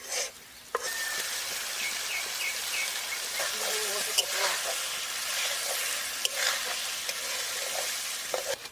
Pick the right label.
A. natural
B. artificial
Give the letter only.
A